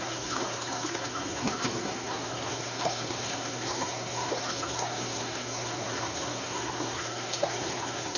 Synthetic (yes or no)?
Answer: yes